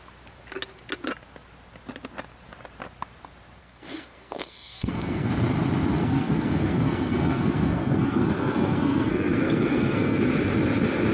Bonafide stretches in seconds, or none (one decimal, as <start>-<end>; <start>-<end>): 0.0-3.6; 5.3-6.0; 10.2-11.1